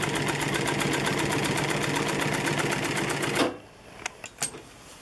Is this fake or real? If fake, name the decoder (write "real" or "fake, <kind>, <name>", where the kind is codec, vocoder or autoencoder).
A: real